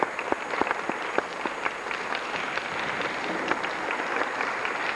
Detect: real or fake fake